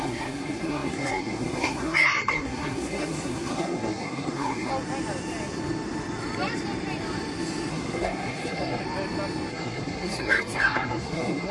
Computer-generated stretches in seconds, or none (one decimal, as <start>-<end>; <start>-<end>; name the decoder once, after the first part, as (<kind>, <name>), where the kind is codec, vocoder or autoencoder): 0.0-4.7 (codec, SNAC); 7.7-8.8; 9.5-11.5

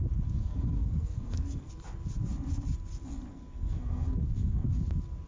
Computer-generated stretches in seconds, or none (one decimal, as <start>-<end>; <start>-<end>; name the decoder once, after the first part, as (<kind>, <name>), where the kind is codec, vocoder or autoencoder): 0.4-1.7 (codec, SNAC); 3.3-4.7